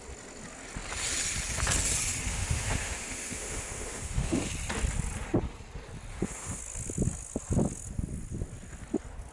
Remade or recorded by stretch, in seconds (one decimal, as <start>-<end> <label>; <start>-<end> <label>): 0.0-2.3 recorded; 2.3-4.5 remade; 4.5-6.1 recorded; 6.1-6.6 remade; 6.6-9.3 recorded